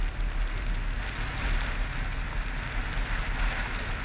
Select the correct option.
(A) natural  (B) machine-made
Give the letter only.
A